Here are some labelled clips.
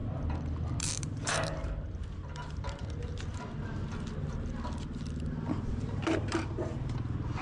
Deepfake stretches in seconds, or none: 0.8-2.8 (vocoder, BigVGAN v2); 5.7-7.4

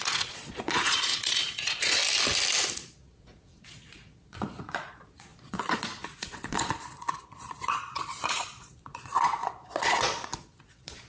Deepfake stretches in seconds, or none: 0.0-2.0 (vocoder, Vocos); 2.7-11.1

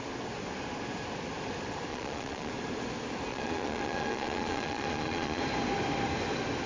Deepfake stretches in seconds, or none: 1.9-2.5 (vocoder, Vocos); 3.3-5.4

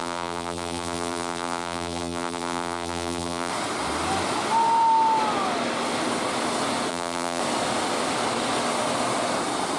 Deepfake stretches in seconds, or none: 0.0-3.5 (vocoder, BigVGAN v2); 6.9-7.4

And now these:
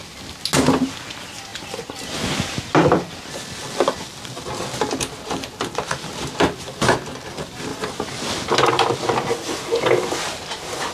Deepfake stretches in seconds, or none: none